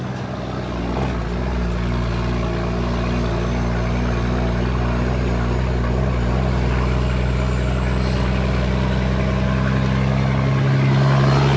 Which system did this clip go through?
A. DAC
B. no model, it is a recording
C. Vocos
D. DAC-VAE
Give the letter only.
B